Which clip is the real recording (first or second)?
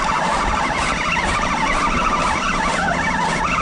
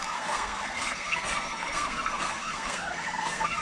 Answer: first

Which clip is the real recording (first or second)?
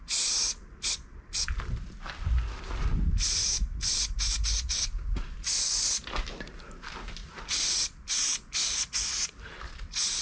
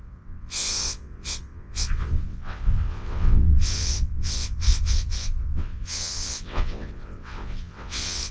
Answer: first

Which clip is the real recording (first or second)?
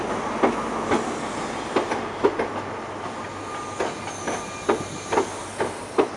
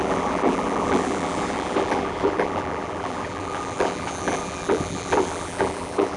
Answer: first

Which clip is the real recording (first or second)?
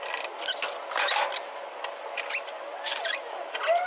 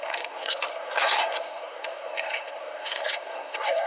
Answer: first